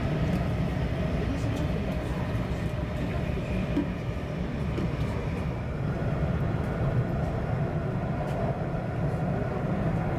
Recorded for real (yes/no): yes